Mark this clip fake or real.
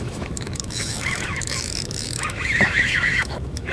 fake